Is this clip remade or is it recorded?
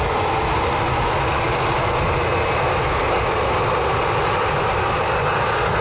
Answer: recorded